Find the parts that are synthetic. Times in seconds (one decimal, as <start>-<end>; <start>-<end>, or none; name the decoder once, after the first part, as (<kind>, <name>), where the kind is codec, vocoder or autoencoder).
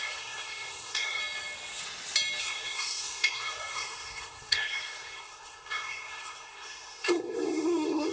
0.0-1.2 (codec, SNAC); 2.4-8.1